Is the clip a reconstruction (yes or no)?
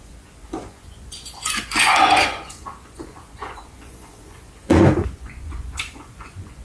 yes